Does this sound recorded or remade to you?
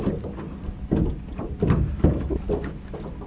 recorded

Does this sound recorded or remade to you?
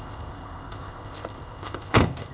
remade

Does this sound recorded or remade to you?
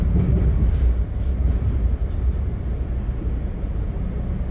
recorded